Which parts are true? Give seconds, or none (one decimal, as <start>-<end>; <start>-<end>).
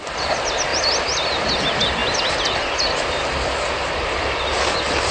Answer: 0.0-5.1